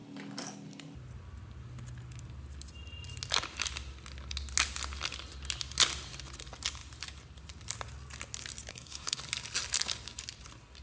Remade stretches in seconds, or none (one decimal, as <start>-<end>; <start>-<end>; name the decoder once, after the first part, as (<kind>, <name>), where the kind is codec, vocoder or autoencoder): 8.7-9.2 (codec, SNAC)

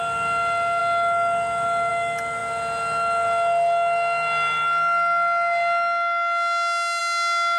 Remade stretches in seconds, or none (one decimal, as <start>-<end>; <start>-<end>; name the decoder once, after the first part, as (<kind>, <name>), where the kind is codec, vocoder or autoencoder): none

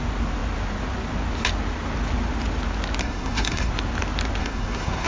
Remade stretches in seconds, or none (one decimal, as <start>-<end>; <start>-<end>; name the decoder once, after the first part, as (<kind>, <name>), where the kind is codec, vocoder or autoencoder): 3.0-3.7 (codec, SNAC); 4.4-5.1